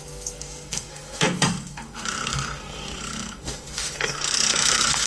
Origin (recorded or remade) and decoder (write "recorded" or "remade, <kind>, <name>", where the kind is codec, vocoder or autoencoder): remade, codec, SNAC